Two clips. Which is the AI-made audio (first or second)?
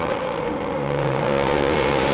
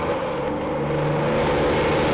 first